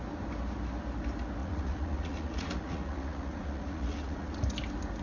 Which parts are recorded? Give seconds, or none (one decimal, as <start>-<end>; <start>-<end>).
0.0-1.4; 4.4-5.0